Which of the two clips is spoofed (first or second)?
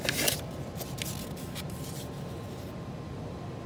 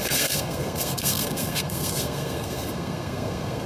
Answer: second